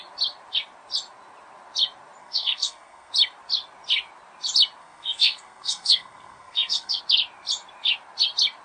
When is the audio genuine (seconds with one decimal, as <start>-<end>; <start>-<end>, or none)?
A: 0.0-2.2; 3.1-4.8; 7.0-8.6